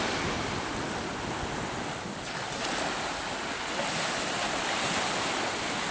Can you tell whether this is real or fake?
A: real